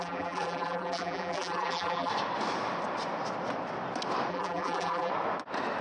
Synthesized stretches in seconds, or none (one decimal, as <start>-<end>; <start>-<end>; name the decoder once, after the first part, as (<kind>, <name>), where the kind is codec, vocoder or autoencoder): 0.0-2.1 (vocoder, BigVGAN v2); 4.3-5.1